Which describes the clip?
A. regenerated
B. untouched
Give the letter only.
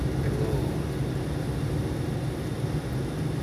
B